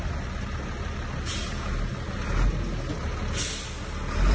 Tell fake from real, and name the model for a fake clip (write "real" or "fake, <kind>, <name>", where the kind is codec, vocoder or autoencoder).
real